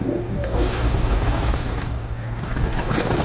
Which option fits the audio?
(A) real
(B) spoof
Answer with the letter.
B